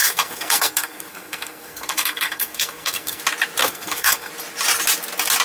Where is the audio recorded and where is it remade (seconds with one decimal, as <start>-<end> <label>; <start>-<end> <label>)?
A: 0.0-3.2 remade; 3.2-3.6 recorded; 3.6-4.3 remade; 4.3-5.4 recorded